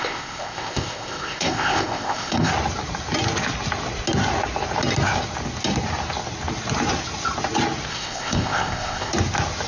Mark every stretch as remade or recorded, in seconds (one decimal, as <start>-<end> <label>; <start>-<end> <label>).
0.0-2.5 remade; 2.5-7.9 recorded; 7.9-9.1 remade; 9.1-9.7 recorded